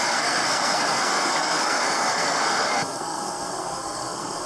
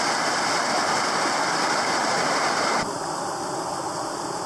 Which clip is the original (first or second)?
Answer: second